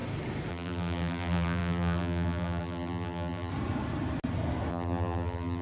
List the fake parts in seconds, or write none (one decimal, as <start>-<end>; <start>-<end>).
0.5-3.5; 4.7-5.6